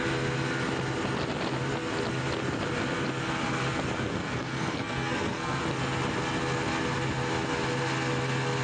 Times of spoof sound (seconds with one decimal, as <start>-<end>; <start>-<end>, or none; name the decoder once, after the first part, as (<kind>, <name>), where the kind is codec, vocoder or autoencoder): 4.2-5.6 (codec, SNAC)